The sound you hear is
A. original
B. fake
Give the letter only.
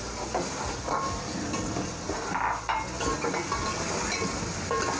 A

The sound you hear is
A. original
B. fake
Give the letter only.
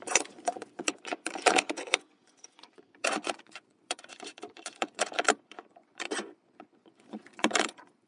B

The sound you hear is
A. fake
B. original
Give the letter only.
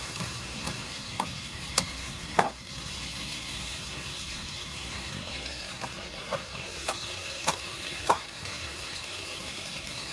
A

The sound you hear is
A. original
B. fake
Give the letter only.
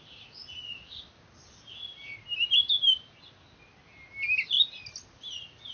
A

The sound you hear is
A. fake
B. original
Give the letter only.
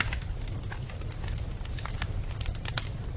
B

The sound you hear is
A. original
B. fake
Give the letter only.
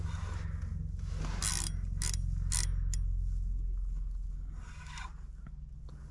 A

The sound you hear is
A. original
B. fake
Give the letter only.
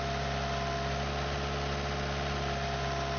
A